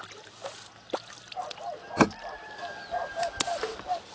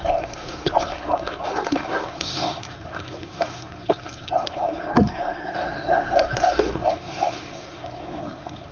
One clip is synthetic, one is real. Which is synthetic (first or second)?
second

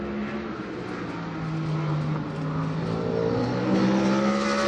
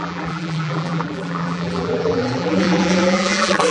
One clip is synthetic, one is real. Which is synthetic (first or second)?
second